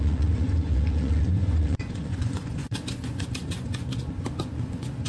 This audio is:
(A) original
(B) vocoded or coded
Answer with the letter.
B